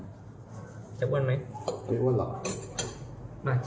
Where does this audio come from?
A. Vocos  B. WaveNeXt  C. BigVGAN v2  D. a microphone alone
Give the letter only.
D